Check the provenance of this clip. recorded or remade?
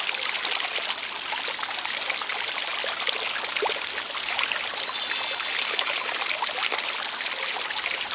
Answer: recorded